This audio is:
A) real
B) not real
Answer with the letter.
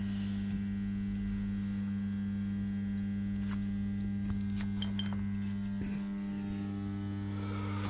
A